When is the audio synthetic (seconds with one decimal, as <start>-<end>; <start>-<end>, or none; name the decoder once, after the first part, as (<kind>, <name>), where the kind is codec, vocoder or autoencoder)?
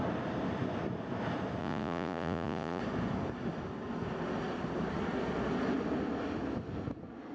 1.6-2.8 (vocoder, Vocos)